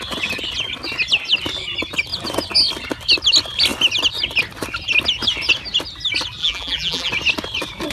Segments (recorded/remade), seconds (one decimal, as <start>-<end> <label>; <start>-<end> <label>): 0.0-6.4 recorded; 6.4-7.1 remade; 7.1-7.9 recorded